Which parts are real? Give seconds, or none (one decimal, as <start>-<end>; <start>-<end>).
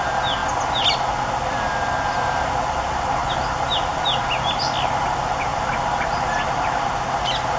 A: 0.0-7.6